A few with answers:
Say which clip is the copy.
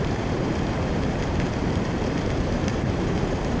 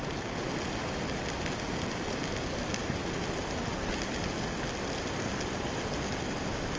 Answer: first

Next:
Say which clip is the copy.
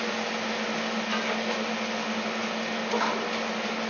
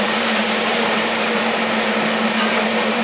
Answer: second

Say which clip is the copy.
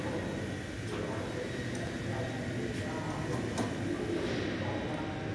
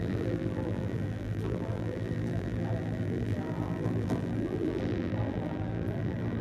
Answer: second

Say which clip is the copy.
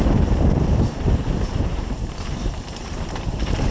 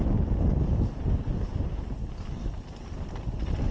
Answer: first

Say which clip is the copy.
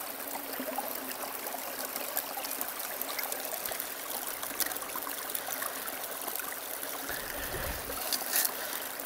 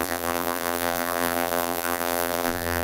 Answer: second